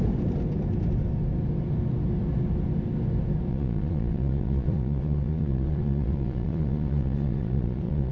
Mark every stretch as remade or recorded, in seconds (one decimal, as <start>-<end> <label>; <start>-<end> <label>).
0.0-3.5 recorded; 3.5-8.1 remade